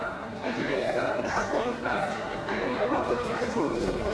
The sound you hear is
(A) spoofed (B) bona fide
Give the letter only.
A